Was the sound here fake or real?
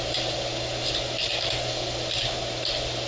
real